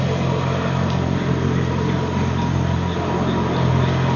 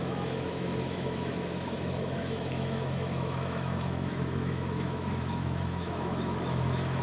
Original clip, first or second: first